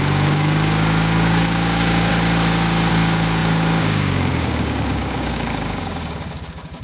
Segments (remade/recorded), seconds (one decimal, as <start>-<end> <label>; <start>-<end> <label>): 0.0-2.1 remade; 2.1-2.9 recorded; 2.9-6.8 remade